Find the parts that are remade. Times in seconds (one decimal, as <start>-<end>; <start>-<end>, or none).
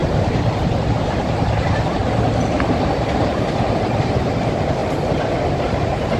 0.0-2.0; 3.1-4.8; 5.6-6.2